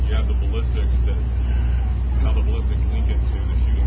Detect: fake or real real